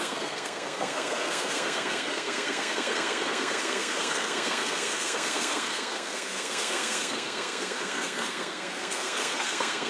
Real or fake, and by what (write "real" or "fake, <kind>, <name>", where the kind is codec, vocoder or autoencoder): fake, codec, SNAC